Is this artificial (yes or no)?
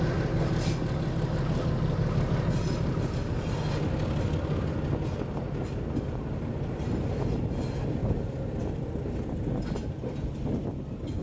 no